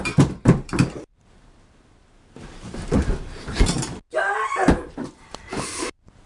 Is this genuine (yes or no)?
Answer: no